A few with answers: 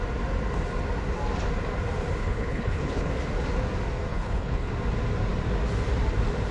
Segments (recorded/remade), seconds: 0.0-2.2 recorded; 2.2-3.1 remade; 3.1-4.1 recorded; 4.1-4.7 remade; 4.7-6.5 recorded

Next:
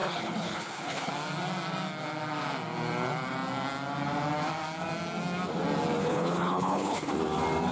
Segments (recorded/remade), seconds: 0.0-1.1 remade; 1.1-6.0 recorded; 6.0-7.1 remade; 7.1-7.7 recorded

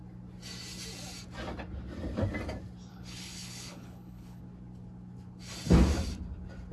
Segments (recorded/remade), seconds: 0.0-2.9 recorded; 2.9-4.4 remade; 4.4-6.7 recorded

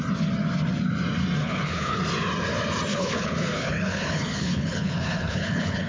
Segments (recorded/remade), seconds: 0.0-1.4 recorded; 1.4-2.0 remade; 2.0-2.9 recorded; 2.9-5.9 remade

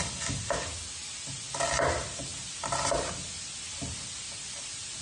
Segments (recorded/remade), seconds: 0.0-5.0 recorded